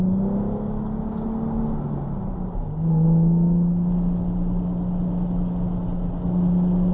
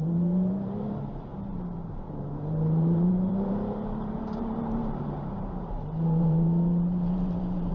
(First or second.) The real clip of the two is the first